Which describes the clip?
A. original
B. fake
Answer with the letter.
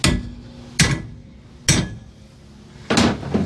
A